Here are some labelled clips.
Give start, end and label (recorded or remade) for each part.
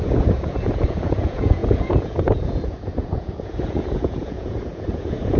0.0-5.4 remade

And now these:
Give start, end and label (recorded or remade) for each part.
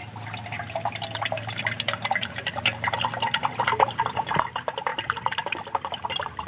0.0-6.5 recorded